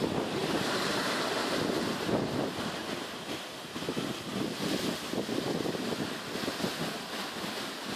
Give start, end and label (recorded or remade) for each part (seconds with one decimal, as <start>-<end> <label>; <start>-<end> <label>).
0.0-0.4 recorded; 0.4-1.2 remade; 1.2-8.0 recorded